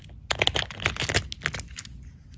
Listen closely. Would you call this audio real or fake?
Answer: real